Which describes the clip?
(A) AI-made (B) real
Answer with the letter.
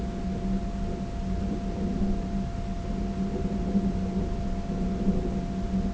B